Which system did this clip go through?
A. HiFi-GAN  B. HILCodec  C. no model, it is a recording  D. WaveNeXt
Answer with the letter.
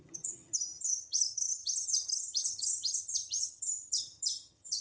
A